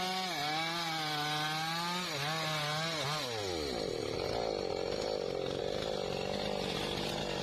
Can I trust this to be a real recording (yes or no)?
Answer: yes